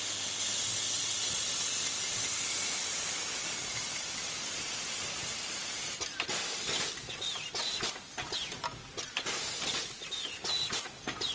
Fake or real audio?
real